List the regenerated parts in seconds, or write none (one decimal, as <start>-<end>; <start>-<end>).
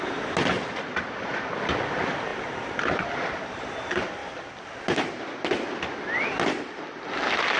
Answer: none